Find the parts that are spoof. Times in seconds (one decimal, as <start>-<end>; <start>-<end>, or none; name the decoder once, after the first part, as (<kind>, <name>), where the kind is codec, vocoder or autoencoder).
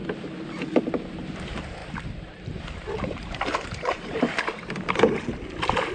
1.8-4.4 (vocoder, BigVGAN v2)